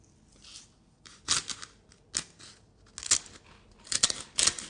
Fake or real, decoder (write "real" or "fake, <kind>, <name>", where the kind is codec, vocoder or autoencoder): real